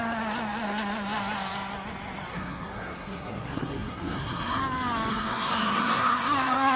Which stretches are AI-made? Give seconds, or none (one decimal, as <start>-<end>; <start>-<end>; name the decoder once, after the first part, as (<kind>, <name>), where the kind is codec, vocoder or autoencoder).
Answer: 2.3-4.6 (codec, SNAC); 5.1-6.8